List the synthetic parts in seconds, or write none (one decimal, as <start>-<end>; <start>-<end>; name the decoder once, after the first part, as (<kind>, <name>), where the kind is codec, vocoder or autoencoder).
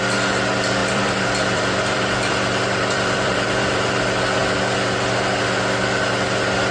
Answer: 0.8-4.0 (vocoder, BigVGAN v2)